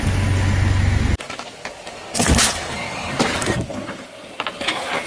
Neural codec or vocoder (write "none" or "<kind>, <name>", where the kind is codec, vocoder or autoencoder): none